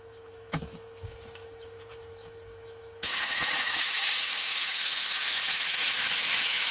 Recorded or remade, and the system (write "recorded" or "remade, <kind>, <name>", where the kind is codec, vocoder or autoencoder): remade, autoencoder, DAC-VAE